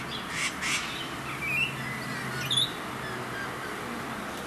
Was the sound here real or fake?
real